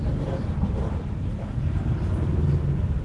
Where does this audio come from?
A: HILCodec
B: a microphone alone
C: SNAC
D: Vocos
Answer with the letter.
B